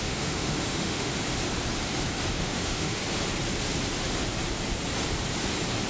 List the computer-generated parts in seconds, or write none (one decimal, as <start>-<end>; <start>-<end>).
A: 0.0-1.1; 2.3-3.0